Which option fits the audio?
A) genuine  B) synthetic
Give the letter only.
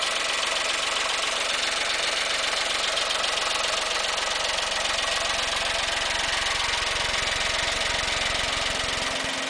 A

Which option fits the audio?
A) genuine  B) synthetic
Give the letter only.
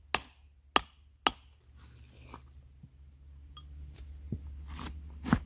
A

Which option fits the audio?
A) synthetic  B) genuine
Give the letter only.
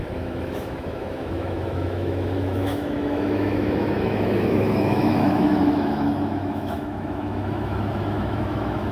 A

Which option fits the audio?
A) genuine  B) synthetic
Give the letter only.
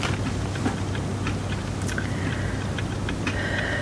A